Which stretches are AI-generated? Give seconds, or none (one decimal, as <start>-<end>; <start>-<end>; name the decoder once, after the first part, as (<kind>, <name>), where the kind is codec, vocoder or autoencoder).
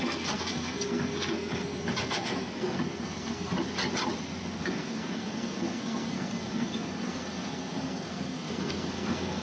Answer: 0.0-3.5 (codec, SNAC); 4.6-9.4